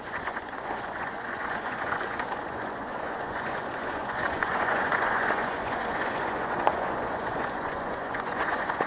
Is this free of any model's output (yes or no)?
no